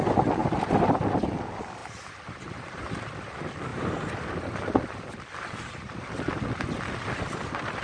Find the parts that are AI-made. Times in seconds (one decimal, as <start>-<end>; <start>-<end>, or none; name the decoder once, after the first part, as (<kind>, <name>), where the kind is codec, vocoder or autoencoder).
0.4-0.9 (vocoder, BigVGAN v2); 1.8-2.9; 3.7-4.5